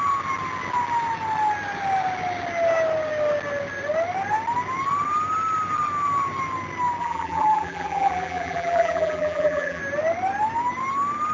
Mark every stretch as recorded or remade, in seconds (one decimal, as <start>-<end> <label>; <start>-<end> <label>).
0.0-7.0 recorded; 7.0-9.8 remade; 9.8-11.3 recorded